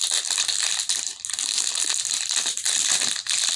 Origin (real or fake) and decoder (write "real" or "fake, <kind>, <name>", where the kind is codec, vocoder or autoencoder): real